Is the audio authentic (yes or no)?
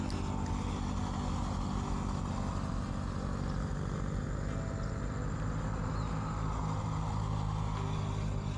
yes